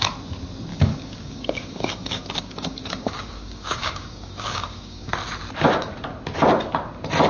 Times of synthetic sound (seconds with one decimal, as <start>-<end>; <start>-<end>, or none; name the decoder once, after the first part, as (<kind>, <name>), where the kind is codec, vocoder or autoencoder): 0.7-5.1 (codec, DAC)